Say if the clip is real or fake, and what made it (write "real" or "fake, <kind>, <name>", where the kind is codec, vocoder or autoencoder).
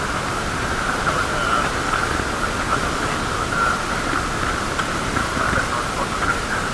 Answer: real